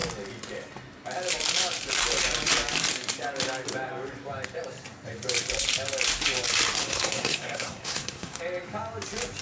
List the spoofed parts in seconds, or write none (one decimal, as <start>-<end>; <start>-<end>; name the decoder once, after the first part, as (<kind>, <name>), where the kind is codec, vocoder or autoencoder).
6.8-8.4 (codec, SNAC)